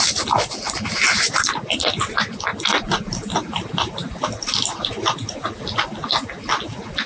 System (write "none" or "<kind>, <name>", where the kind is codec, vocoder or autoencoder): none